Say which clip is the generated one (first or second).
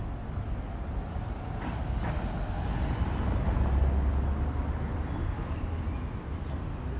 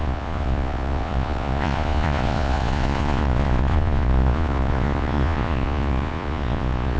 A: second